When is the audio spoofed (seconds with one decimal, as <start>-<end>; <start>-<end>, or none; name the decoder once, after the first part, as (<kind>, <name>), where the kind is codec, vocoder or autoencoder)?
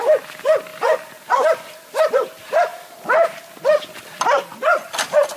none